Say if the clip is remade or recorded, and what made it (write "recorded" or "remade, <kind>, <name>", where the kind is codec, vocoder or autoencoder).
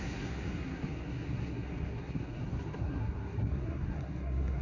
remade, codec, SNAC